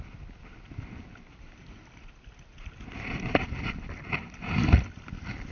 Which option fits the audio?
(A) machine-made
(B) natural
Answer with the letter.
B